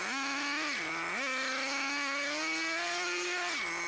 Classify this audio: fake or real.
real